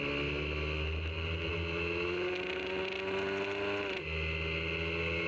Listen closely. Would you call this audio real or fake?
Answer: real